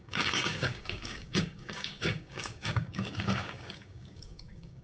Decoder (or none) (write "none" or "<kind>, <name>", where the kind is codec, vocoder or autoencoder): codec, DAC